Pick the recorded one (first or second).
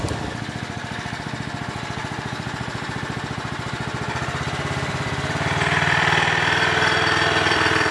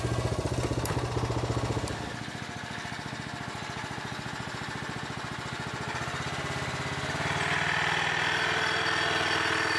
second